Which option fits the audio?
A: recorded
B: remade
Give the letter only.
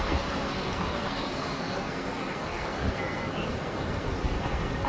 B